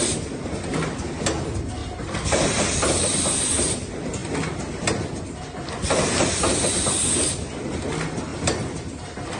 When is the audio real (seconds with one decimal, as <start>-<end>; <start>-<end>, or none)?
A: 0.0-8.3